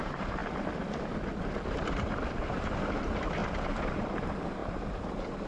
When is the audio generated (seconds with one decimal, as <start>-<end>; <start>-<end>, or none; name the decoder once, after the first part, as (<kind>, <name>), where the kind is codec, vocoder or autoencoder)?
0.0-0.4 (vocoder, BigVGAN v2); 2.4-3.4; 3.9-5.5